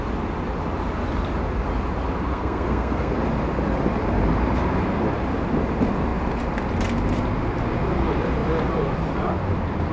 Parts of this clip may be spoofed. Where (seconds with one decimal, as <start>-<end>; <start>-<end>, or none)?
2.3-3.1